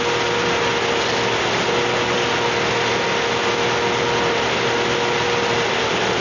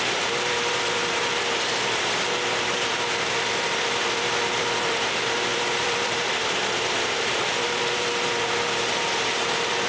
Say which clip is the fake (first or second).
second